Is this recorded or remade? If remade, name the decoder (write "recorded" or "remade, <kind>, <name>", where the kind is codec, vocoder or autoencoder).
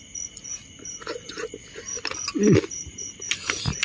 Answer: recorded